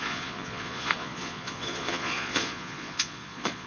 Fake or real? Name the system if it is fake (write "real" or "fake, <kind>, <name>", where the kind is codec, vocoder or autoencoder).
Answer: fake, vocoder, Vocos